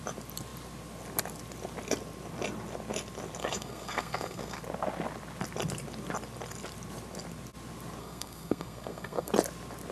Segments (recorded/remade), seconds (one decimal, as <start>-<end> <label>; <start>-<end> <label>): 0.0-3.4 recorded; 3.4-4.6 remade; 4.6-8.0 recorded; 8.0-9.3 remade; 9.3-9.9 recorded